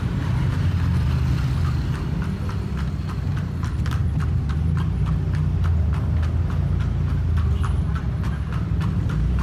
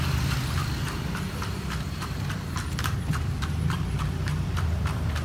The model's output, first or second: second